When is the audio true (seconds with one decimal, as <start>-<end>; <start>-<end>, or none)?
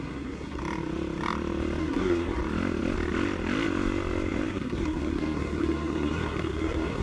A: 0.6-1.8; 2.4-4.5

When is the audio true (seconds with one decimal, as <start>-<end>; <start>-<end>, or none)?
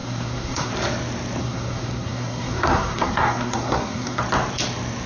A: 0.7-1.4; 4.2-5.1